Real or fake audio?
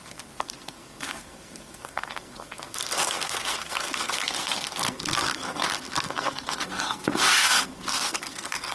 fake